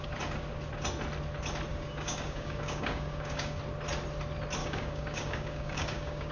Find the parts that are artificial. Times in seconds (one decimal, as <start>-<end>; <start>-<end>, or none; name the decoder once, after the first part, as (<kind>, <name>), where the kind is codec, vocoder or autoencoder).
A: 1.7-3.6 (codec, DAC); 4.6-6.3

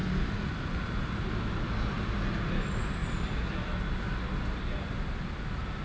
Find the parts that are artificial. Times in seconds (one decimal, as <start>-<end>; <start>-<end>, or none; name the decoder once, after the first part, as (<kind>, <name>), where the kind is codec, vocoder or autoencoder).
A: none